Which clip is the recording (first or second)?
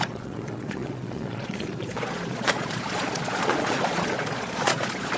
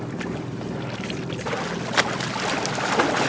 second